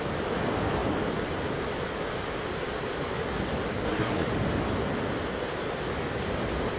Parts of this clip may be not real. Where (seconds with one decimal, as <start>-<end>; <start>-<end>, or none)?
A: 3.7-4.3